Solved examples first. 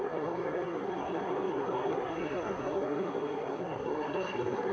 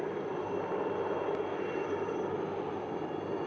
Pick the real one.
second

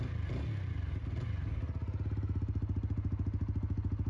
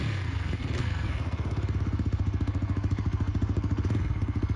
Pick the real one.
first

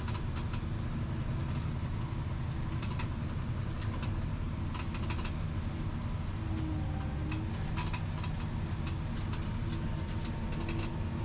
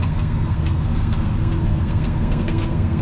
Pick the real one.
first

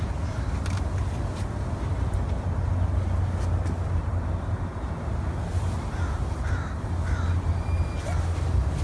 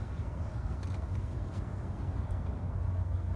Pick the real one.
first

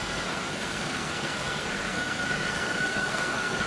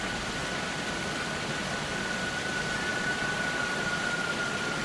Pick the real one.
second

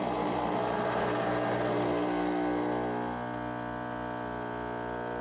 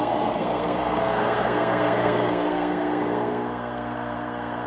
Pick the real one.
first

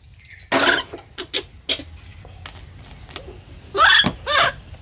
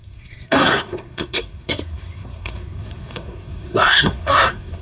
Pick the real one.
first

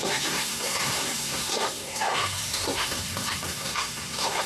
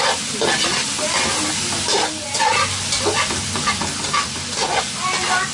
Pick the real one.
second